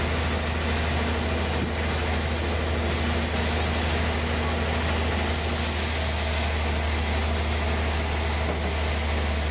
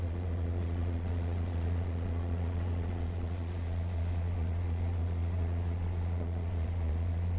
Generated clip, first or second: second